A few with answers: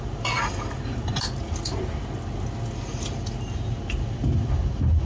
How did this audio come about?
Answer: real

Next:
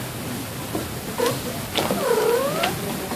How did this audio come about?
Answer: real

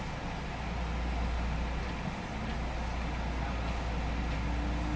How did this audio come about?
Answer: real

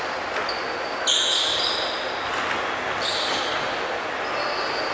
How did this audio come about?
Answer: real